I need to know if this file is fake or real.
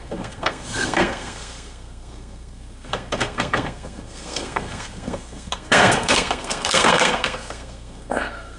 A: fake